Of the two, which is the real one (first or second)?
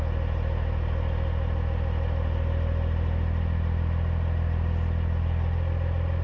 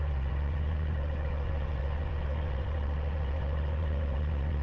first